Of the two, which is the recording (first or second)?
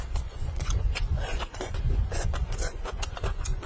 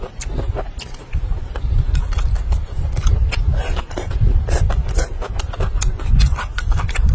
second